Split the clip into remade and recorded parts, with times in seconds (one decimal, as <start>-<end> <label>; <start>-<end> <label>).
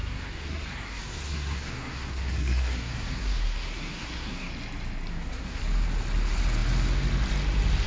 0.0-4.5 remade; 4.5-5.1 recorded; 5.1-5.6 remade; 5.6-7.9 recorded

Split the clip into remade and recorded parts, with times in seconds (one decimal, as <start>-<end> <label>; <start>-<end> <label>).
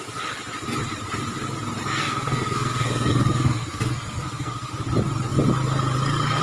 0.0-1.9 recorded; 1.9-4.7 remade; 4.7-6.4 recorded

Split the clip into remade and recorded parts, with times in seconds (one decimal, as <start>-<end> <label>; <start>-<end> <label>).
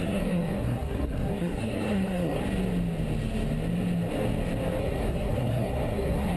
0.0-2.4 remade; 2.4-4.8 recorded; 4.8-6.4 remade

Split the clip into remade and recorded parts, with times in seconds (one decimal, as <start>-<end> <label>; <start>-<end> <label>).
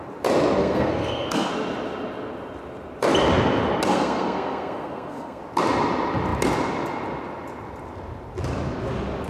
0.0-0.6 recorded; 0.6-1.5 remade; 1.5-3.9 recorded; 3.9-5.4 remade; 5.4-9.3 recorded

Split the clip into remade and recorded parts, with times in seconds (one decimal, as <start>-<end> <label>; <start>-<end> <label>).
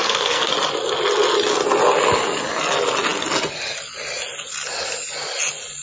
0.0-0.5 remade; 0.5-5.8 recorded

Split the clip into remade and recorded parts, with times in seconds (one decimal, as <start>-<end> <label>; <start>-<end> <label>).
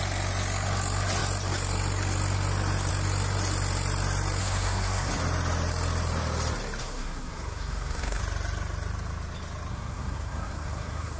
0.0-4.4 recorded; 4.4-5.1 remade; 5.1-6.8 recorded; 6.8-8.2 remade; 8.2-9.7 recorded; 9.7-11.2 remade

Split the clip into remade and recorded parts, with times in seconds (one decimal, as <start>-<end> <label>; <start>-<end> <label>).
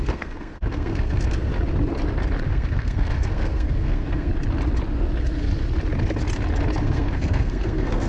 0.0-1.5 remade; 1.5-2.5 recorded; 2.5-4.3 remade; 4.3-6.8 recorded; 6.8-8.1 remade